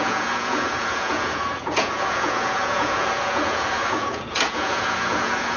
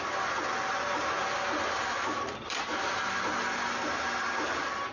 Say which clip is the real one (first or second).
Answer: second